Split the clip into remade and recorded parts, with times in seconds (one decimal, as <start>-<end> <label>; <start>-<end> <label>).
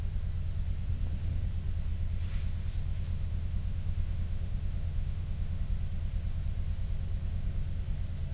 0.0-3.1 recorded; 3.1-5.6 remade; 5.6-8.3 recorded